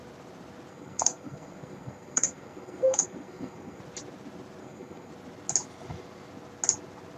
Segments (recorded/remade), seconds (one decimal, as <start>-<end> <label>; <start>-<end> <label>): 0.0-0.7 recorded; 0.7-3.8 remade; 3.8-4.6 recorded; 4.6-5.1 remade; 5.1-7.2 recorded